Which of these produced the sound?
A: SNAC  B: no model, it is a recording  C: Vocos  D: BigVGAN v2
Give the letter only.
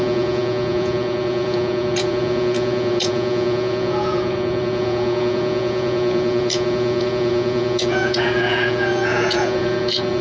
C